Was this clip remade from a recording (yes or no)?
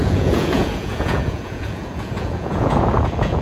yes